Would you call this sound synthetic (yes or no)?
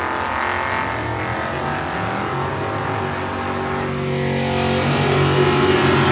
no